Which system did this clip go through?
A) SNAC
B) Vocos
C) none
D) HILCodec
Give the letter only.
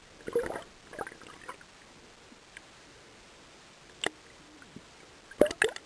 C